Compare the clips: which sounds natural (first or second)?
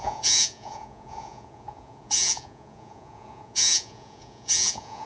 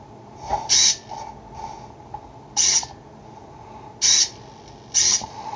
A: second